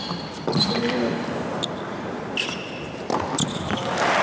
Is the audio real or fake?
real